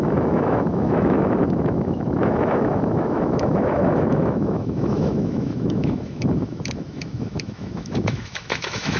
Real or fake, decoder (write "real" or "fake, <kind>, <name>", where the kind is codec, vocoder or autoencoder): fake, autoencoder, DAC-VAE